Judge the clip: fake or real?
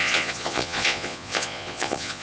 fake